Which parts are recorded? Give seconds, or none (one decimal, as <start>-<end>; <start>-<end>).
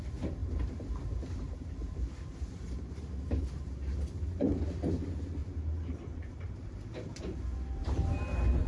0.0-0.4; 4.5-5.4; 7.2-7.8